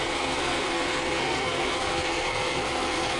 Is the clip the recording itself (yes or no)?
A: no